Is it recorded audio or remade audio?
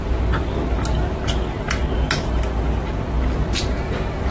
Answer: recorded